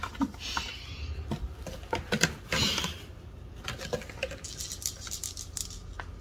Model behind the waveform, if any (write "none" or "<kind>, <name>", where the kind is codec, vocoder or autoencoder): none